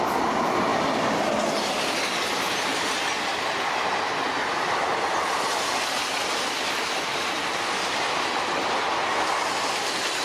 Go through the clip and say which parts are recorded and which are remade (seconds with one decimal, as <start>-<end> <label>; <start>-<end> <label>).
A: 0.0-7.1 recorded; 7.1-8.8 remade; 8.8-10.2 recorded